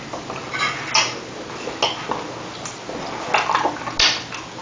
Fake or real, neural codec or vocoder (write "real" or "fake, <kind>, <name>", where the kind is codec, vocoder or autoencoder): real